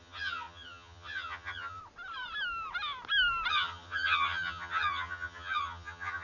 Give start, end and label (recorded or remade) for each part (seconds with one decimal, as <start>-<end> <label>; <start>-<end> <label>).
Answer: 0.0-1.8 remade; 1.8-3.5 recorded; 3.5-6.2 remade